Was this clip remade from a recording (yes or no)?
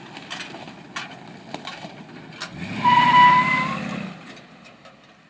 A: no